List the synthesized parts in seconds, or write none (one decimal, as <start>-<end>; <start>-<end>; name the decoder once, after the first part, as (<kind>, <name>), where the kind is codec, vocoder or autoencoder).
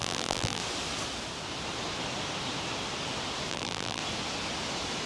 0.0-0.6 (vocoder, BigVGAN v2); 3.5-4.0